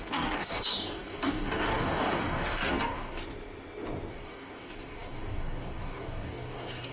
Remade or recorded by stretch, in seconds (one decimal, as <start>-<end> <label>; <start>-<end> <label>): 0.0-3.2 remade; 3.2-4.1 recorded; 4.1-6.9 remade